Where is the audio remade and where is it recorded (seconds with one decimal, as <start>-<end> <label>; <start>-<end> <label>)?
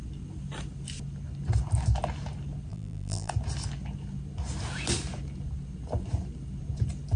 0.0-2.7 recorded; 2.7-3.3 remade; 3.3-7.2 recorded